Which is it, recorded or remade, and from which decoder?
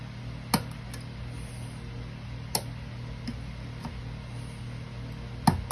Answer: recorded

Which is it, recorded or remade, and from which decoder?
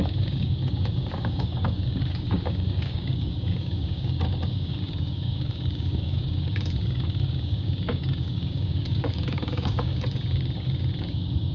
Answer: remade, codec, DAC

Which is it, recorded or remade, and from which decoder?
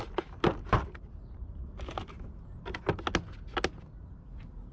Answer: recorded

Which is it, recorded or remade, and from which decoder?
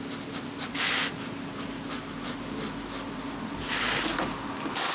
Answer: recorded